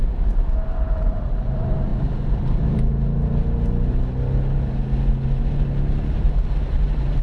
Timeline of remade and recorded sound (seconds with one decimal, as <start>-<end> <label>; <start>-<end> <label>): 0.0-1.9 remade; 1.9-6.2 recorded; 6.2-7.2 remade